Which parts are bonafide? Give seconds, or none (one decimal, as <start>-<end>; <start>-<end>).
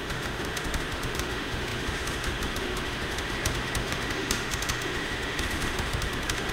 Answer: none